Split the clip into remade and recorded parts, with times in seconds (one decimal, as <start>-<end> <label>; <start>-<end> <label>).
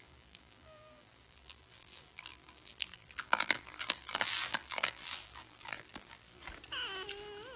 0.0-6.4 remade; 6.4-7.6 recorded